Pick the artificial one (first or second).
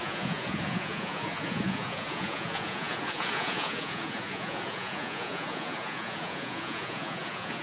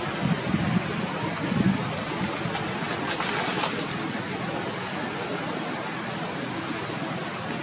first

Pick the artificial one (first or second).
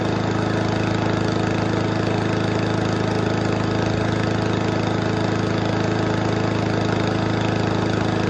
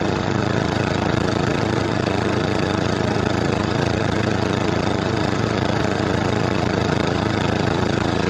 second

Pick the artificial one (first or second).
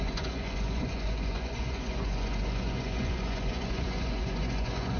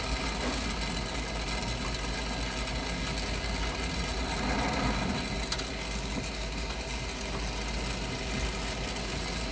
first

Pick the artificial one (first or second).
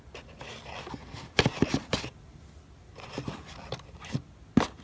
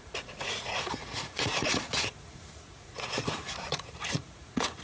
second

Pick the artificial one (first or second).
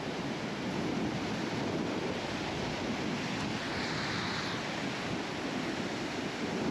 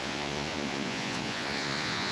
second